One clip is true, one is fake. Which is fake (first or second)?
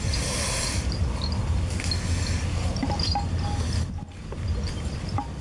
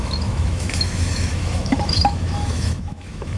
second